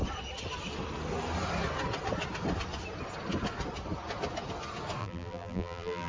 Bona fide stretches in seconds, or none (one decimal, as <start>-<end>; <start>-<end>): 0.0-5.0